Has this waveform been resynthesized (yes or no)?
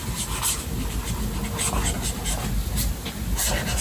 no